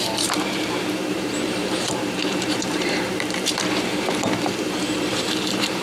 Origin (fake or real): fake